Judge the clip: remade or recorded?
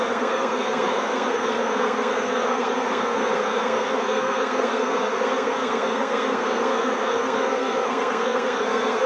remade